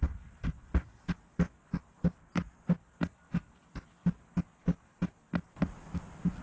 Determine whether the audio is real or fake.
real